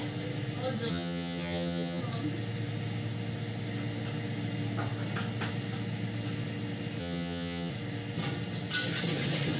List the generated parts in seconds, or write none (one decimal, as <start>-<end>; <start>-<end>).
0.9-2.0; 7.0-7.7